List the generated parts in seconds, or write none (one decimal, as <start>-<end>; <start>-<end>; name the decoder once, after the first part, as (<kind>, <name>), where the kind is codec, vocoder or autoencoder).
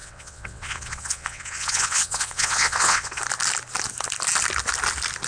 0.0-3.2 (vocoder, WaveNeXt)